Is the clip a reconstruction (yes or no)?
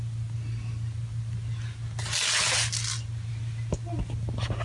no